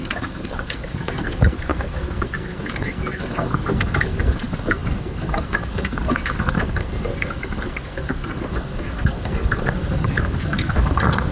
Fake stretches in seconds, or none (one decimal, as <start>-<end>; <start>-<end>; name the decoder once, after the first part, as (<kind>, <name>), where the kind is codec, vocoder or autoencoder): 0.0-11.3 (codec, SNAC)